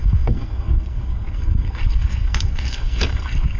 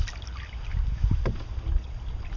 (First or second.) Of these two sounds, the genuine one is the second